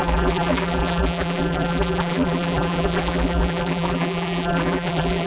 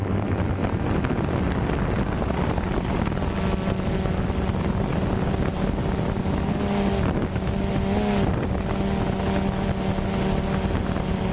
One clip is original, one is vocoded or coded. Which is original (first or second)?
second